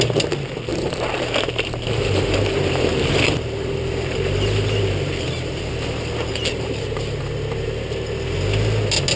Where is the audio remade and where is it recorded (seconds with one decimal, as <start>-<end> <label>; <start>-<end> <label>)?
0.0-0.7 recorded; 0.7-5.7 remade; 5.7-6.3 recorded; 6.3-7.2 remade; 7.2-9.2 recorded